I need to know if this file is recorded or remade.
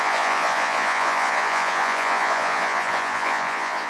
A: remade